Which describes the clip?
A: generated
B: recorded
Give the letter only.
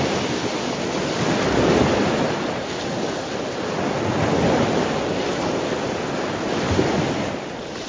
B